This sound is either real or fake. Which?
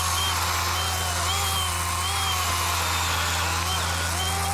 real